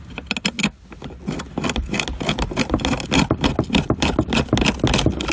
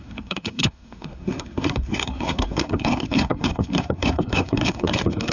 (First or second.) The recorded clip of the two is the first